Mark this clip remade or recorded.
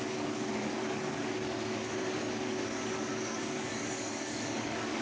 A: remade